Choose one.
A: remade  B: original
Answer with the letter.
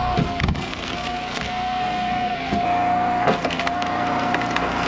A